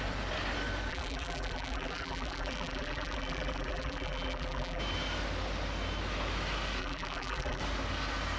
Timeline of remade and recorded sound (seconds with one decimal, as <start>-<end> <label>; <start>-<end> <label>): 0.0-0.9 recorded; 0.9-4.8 remade; 4.8-6.8 recorded; 6.8-7.6 remade; 7.6-8.4 recorded